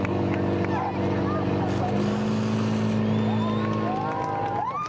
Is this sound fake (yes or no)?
no